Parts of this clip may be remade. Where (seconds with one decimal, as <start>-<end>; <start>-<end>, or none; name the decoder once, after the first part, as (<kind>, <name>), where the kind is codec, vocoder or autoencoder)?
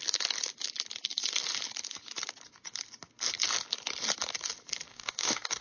4.9-5.6 (codec, DAC)